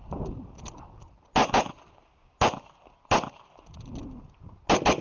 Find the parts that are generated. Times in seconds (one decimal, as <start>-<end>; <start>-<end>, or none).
none